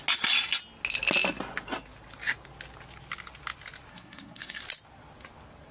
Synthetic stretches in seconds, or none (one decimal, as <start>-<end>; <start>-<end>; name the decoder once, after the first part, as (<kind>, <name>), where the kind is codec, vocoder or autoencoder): 3.9-4.6 (codec, SNAC)